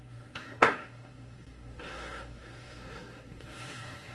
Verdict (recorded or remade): remade